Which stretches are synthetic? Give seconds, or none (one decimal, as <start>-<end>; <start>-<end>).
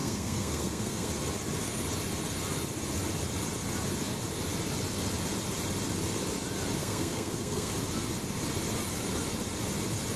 0.0-1.1; 6.8-7.7